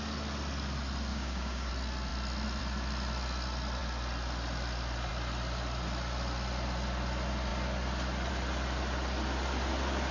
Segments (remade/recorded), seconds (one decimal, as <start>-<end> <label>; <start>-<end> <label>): 0.0-1.1 recorded; 1.1-1.7 remade; 1.7-10.1 recorded